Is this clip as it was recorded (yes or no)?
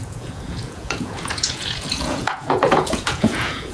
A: no